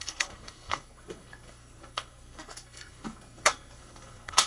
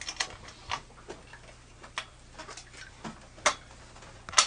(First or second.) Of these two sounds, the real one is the second